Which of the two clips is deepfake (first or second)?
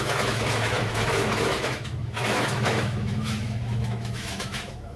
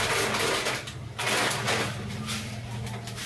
first